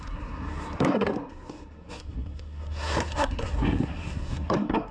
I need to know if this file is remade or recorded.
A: remade